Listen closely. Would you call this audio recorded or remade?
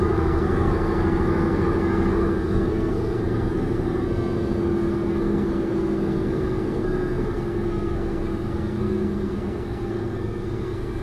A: remade